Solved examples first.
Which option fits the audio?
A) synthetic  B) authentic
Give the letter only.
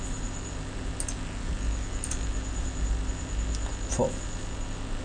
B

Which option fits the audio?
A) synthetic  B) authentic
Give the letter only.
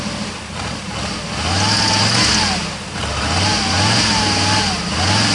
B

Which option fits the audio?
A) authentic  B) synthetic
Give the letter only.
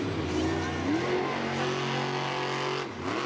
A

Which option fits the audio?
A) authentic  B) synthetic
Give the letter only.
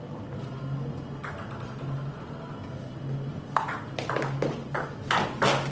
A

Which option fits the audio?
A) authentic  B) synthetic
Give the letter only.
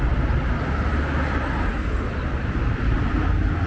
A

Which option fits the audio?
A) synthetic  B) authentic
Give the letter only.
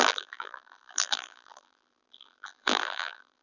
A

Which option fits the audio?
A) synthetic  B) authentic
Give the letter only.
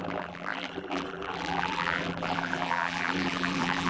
A